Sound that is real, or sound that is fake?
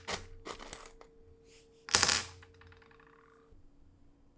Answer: real